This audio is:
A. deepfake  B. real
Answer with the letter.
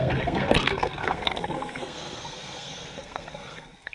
A